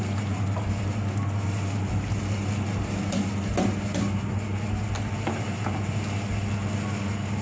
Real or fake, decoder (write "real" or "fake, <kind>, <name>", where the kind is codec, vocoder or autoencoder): real